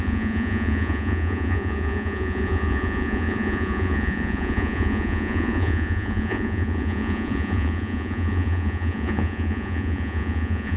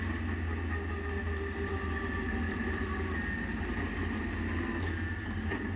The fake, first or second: first